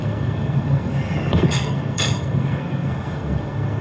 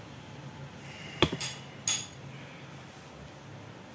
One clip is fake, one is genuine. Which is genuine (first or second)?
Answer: second